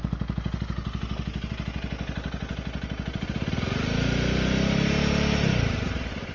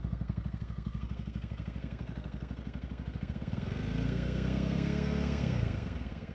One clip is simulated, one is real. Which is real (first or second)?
first